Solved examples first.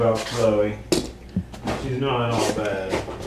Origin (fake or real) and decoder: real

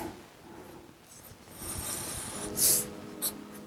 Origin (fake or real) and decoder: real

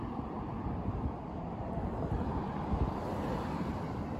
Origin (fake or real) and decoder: fake, vocoder, BigVGAN v2